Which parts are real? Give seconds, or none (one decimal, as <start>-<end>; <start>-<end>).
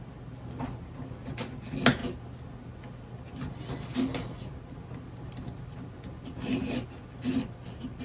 0.0-8.0